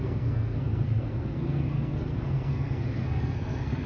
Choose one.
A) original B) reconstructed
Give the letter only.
B